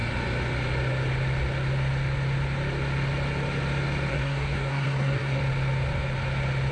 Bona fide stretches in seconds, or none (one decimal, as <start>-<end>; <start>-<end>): 0.0-4.1; 5.4-6.7